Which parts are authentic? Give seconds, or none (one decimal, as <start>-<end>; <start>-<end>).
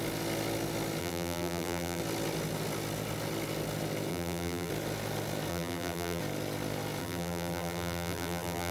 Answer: 0.0-1.0; 2.0-4.1; 4.7-5.5; 6.2-7.0